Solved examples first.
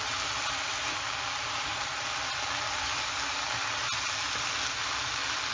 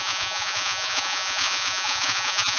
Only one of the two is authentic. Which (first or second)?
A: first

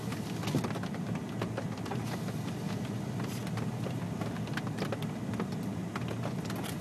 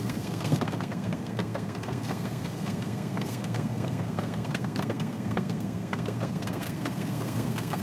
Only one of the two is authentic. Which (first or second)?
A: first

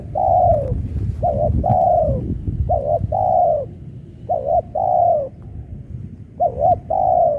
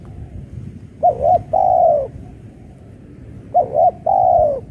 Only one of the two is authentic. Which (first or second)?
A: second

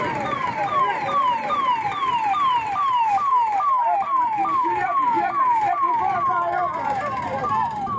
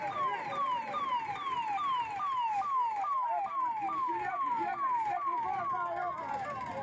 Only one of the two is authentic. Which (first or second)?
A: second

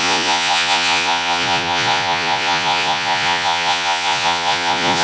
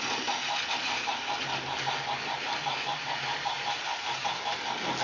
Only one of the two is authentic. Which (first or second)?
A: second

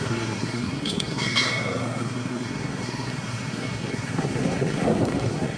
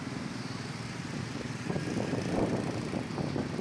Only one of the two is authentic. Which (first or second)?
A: second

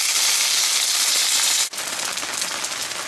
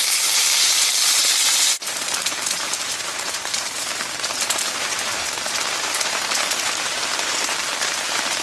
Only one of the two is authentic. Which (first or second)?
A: first